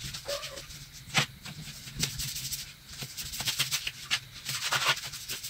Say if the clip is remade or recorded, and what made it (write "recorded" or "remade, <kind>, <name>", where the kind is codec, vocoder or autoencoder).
remade, vocoder, BigVGAN v2